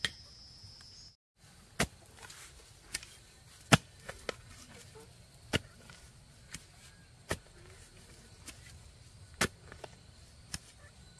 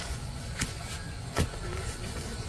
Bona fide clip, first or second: first